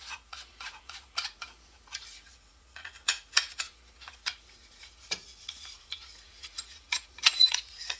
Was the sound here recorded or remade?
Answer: remade